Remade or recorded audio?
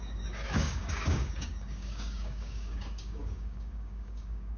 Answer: remade